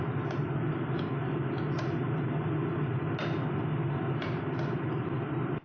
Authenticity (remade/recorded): recorded